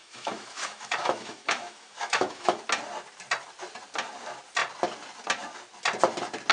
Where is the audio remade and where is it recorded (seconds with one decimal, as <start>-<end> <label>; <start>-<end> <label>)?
0.0-2.6 remade; 2.6-6.5 recorded